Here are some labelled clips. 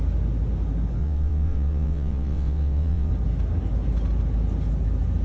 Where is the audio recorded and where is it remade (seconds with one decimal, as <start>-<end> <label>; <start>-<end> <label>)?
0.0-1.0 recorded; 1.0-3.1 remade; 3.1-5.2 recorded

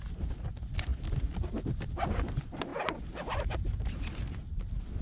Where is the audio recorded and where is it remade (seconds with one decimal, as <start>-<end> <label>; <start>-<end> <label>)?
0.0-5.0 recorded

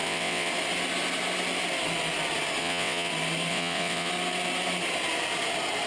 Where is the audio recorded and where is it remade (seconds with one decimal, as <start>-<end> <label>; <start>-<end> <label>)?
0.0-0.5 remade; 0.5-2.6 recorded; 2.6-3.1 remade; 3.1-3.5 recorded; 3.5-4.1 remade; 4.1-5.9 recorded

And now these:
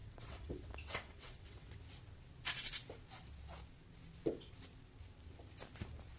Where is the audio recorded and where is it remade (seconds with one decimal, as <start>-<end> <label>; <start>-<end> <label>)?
0.0-1.8 remade; 1.8-6.2 recorded

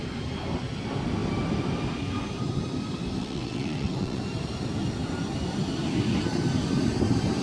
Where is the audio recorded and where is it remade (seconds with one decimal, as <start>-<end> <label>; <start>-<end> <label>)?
0.0-3.2 recorded; 3.2-4.2 remade; 4.2-7.4 recorded

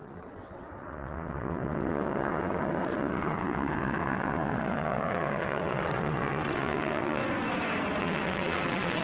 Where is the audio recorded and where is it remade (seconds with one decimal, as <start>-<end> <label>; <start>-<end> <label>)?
0.0-7.2 remade; 7.2-8.0 recorded; 8.0-9.0 remade

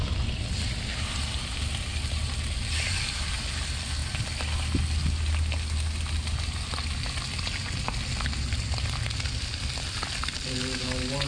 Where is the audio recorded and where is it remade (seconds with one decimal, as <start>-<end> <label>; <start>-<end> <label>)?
0.0-11.3 recorded

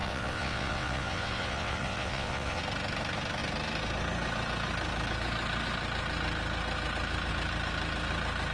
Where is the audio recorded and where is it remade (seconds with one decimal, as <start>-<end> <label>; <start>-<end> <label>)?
0.0-2.6 remade; 2.6-8.5 recorded